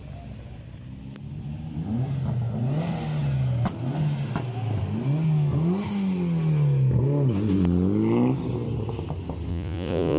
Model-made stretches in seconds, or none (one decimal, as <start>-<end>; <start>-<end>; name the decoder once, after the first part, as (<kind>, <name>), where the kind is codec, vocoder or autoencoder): 9.5-10.2 (vocoder, Vocos)